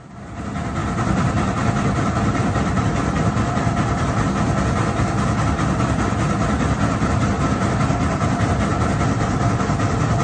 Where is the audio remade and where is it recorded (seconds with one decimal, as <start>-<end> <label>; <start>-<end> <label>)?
0.0-0.8 recorded; 0.8-4.3 remade; 4.3-10.2 recorded